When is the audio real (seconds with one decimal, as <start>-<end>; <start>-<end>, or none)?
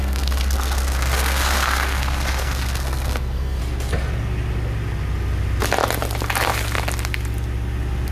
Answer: 3.6-8.1